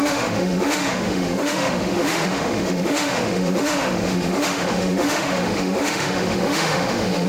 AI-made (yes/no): yes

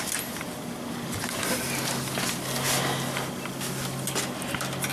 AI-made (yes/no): no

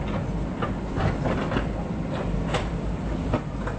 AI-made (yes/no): yes